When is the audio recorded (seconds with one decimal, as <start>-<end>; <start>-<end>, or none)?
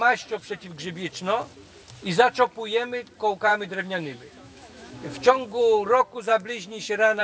0.0-3.5; 5.6-6.3